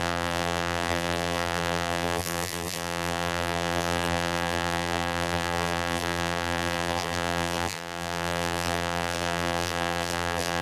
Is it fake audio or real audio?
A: fake